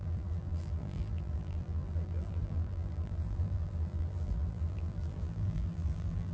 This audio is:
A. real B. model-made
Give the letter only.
B